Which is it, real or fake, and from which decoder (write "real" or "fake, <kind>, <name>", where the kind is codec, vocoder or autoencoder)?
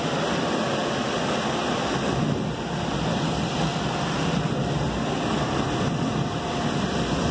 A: real